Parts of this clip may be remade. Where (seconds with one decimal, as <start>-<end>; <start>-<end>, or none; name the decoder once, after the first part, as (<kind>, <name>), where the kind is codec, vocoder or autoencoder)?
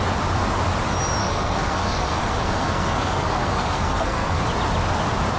1.2-4.4 (codec, SNAC)